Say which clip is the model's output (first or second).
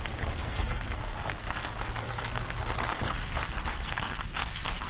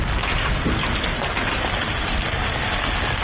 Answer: first